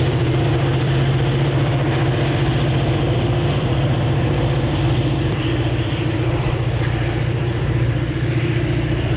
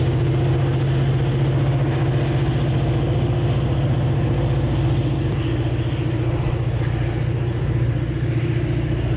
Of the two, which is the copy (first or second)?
first